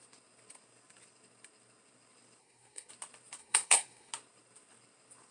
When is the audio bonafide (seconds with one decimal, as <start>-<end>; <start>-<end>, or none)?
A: 0.0-2.4; 2.9-3.4; 4.1-5.3